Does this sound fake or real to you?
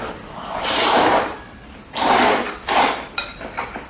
fake